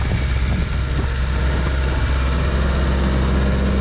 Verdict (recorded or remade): recorded